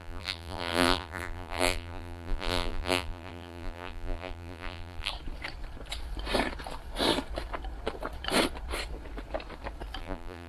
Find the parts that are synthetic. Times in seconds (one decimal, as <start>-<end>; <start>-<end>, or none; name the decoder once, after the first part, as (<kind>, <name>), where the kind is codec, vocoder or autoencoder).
0.0-5.1 (vocoder, BigVGAN v2); 10.0-10.5